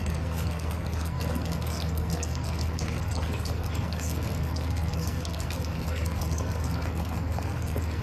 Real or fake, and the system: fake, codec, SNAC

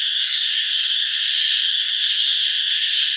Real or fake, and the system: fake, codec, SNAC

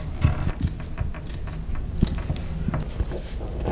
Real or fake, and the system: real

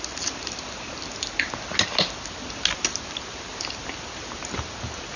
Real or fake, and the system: real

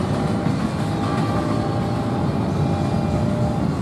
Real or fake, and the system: real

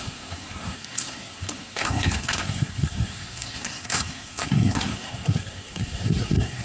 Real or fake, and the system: fake, codec, SNAC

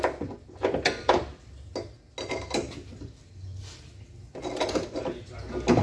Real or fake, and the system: real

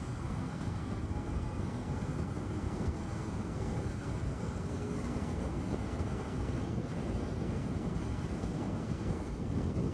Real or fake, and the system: fake, codec, SNAC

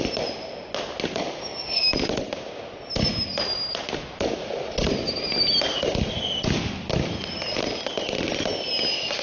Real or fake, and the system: real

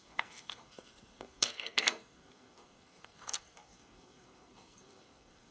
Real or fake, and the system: fake, codec, SNAC